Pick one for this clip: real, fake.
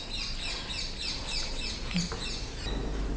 real